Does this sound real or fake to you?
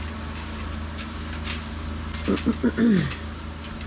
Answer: real